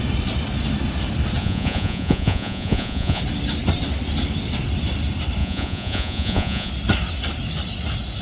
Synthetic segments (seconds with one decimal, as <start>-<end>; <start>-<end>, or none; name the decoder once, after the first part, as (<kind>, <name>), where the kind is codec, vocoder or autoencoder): 1.4-3.2 (vocoder, Vocos); 5.4-6.7